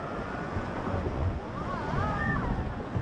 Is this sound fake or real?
fake